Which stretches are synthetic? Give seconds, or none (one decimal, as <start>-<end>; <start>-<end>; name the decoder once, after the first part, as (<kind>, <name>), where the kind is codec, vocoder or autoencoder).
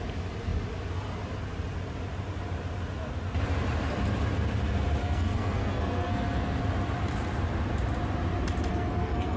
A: 5.0-6.6 (codec, SNAC); 8.7-9.4